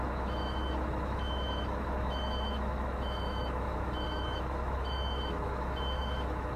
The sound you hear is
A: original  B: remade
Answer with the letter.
B